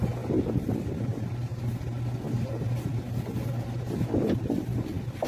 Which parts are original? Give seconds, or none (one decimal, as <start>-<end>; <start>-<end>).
0.0-5.3